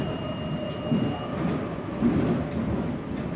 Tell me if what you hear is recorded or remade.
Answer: remade